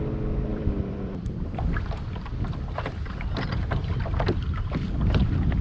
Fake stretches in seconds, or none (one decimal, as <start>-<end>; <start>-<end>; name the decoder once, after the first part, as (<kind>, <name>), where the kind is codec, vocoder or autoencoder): 0.5-3.9 (vocoder, BigVGAN v2)